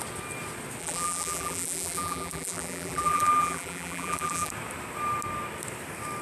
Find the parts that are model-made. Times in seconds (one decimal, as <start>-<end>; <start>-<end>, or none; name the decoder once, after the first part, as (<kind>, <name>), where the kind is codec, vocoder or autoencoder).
0.8-4.5 (vocoder, BigVGAN v2)